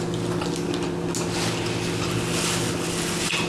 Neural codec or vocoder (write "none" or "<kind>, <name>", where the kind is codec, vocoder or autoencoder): none